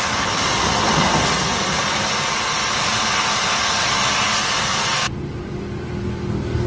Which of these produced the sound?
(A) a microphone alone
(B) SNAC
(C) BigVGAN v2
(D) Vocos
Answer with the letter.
A